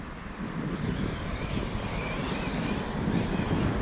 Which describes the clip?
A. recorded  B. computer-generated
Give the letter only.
A